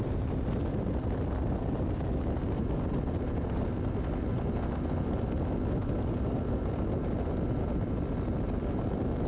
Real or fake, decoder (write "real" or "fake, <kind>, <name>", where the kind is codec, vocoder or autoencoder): real